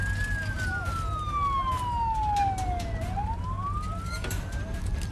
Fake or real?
real